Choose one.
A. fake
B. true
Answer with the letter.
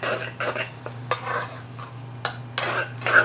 B